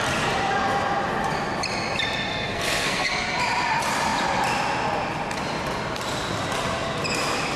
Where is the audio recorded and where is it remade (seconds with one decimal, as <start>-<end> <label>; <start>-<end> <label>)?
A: 0.0-2.3 recorded; 2.3-3.4 remade; 3.4-7.6 recorded